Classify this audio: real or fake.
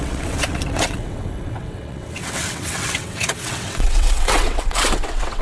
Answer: fake